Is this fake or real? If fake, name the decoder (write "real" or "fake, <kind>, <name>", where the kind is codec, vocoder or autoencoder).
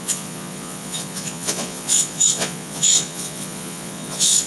fake, vocoder, Vocos